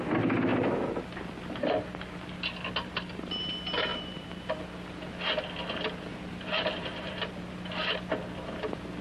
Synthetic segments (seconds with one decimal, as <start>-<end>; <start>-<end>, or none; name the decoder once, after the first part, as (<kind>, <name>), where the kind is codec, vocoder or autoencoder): 3.9-4.4 (vocoder, BigVGAN v2); 6.1-7.3